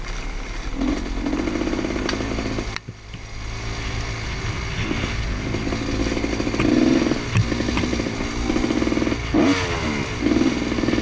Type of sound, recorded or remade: recorded